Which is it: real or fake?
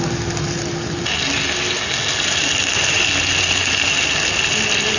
real